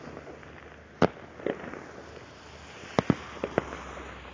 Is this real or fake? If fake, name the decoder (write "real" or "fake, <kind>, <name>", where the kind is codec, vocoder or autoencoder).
real